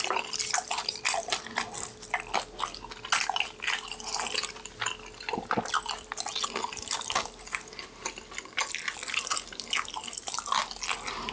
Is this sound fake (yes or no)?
no